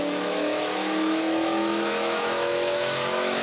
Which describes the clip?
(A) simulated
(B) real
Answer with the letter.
A